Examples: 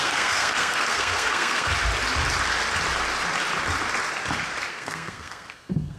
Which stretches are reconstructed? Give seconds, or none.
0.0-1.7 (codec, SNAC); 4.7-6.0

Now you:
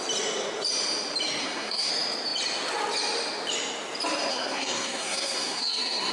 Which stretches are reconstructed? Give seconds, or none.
1.4-1.9 (codec, SNAC); 4.3-6.1